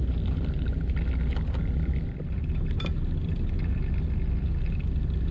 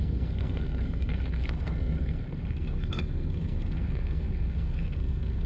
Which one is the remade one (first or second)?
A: second